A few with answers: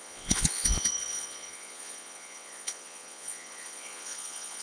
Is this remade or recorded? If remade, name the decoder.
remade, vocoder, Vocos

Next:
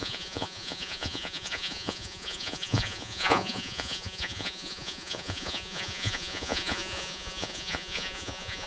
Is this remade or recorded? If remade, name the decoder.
remade, vocoder, Vocos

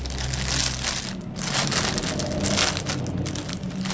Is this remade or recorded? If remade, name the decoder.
recorded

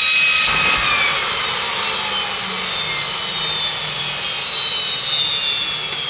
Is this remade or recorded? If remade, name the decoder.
recorded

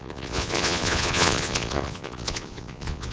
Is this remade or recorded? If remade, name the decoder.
remade, vocoder, Vocos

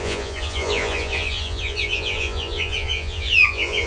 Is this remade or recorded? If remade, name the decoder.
remade, vocoder, Vocos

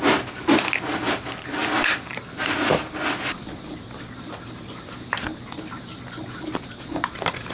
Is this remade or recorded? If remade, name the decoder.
recorded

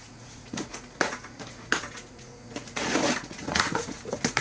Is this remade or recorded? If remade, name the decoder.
remade, vocoder, Vocos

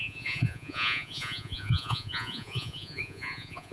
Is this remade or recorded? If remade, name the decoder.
remade, vocoder, Vocos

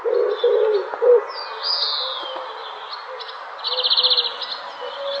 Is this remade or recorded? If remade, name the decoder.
recorded